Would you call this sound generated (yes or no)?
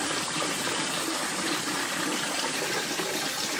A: no